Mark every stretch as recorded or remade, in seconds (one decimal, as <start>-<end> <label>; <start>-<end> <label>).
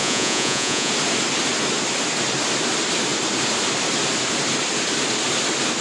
0.0-0.9 remade; 0.9-5.8 recorded